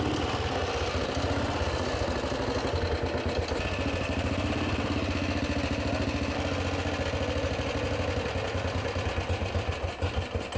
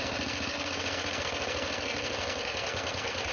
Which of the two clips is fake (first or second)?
second